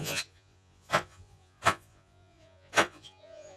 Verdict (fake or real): fake